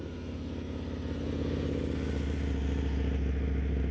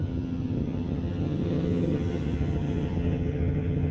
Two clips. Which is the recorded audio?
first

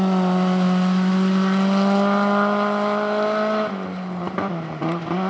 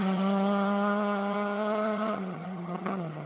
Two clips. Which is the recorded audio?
first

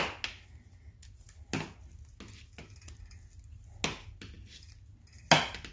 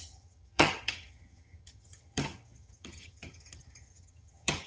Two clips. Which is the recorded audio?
first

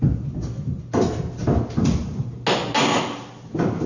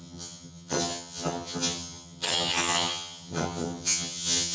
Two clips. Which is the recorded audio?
first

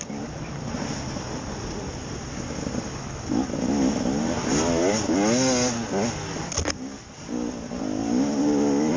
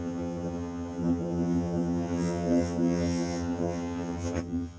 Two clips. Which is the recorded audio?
first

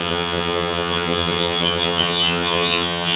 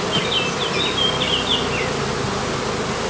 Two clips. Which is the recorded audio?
second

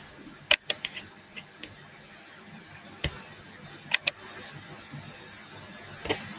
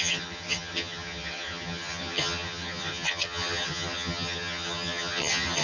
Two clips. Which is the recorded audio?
first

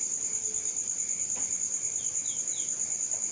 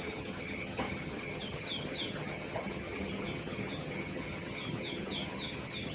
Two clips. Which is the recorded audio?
first